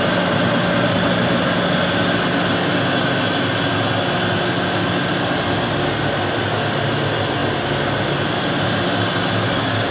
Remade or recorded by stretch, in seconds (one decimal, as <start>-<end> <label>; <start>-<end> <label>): 0.0-9.9 recorded

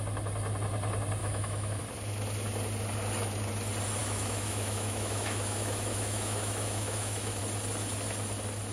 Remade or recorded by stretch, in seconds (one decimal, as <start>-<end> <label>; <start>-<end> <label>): 0.0-1.2 recorded; 1.2-1.8 remade; 1.8-4.0 recorded; 4.0-7.4 remade; 7.4-8.7 recorded